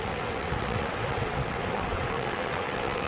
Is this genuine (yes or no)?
no